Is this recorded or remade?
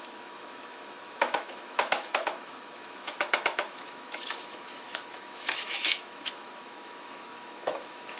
remade